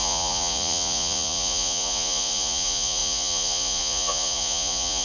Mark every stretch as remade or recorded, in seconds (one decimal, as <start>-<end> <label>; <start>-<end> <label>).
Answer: 0.0-5.0 remade